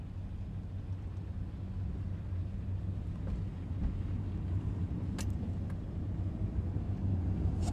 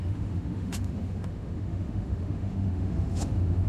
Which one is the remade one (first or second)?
second